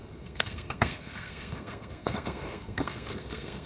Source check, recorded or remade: remade